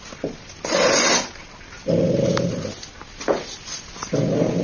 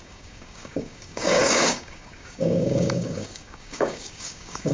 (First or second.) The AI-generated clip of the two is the second